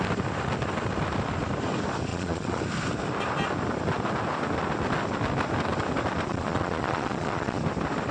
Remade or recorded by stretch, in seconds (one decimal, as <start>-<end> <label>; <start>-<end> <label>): 0.0-2.1 recorded; 2.1-2.6 remade; 2.6-6.3 recorded; 6.3-7.6 remade; 7.6-8.1 recorded

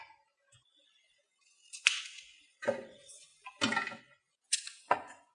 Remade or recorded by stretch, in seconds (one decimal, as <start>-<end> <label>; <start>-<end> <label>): 0.0-3.3 remade; 3.3-4.0 recorded; 4.0-5.3 remade